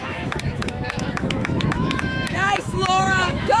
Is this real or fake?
fake